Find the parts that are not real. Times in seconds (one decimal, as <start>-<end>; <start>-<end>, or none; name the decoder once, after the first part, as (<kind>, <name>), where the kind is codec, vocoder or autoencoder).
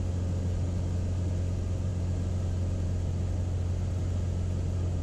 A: none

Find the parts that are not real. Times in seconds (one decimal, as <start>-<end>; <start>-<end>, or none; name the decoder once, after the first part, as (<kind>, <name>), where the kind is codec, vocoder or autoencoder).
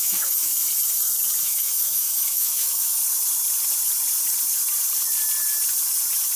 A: 0.0-0.5 (autoencoder, DAC-VAE); 1.4-3.0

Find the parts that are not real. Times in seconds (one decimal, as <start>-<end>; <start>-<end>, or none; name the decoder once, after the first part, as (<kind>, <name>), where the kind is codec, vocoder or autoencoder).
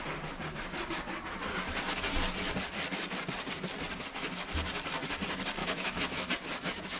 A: 5.6-6.3 (autoencoder, DAC-VAE)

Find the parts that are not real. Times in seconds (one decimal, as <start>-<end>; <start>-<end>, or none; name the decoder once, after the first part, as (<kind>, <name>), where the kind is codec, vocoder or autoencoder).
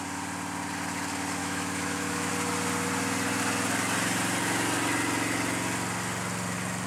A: 1.4-2.3 (autoencoder, DAC-VAE)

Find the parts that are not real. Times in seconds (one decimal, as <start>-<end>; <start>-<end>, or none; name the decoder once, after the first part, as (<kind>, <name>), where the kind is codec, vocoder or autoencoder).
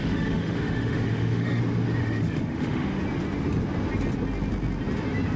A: 0.0-1.6 (autoencoder, DAC-VAE); 2.0-3.0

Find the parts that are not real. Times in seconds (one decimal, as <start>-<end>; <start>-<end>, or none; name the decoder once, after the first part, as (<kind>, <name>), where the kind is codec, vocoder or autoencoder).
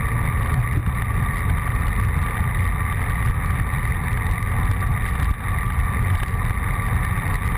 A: none